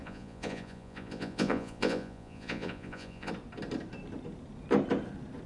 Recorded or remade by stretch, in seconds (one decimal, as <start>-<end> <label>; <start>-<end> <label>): 0.0-3.3 remade; 3.3-5.5 recorded